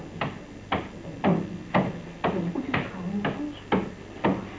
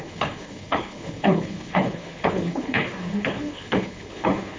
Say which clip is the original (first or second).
first